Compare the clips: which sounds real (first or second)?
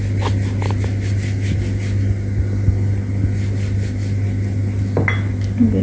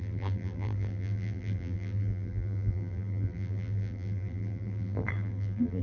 first